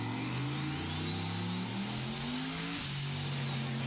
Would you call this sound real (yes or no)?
yes